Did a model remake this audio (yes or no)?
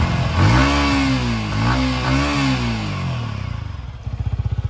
no